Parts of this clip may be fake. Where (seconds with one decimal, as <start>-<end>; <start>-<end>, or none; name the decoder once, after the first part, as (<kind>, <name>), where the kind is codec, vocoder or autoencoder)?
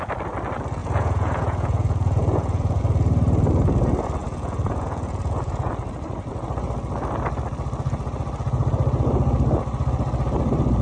0.8-2.8 (vocoder, Vocos); 4.2-5.7